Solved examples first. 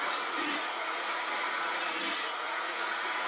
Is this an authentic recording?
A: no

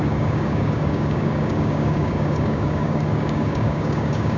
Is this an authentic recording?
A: no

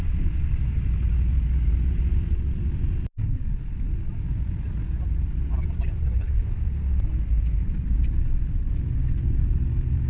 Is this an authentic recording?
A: yes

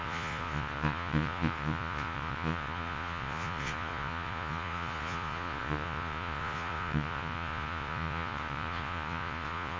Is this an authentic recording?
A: no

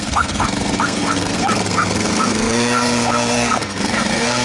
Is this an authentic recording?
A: no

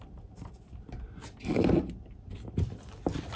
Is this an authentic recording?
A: yes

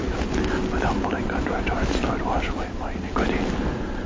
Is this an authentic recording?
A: yes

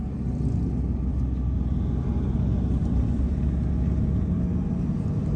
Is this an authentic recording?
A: yes